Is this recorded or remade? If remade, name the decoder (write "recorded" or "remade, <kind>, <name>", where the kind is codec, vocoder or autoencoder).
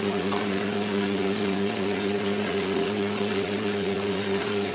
remade, vocoder, Vocos